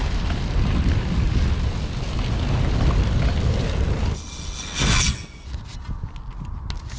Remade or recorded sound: recorded